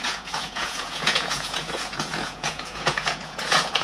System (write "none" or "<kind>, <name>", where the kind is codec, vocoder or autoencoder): vocoder, Vocos